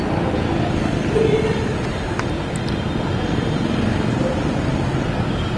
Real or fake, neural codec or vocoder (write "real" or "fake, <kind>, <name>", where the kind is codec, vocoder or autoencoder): real